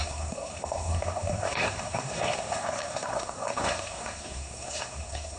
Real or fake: fake